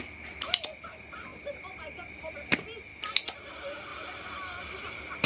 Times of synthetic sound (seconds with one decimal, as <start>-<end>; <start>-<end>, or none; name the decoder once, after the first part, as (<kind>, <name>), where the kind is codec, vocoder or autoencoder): 1.3-2.3 (vocoder, BigVGAN v2); 3.9-5.3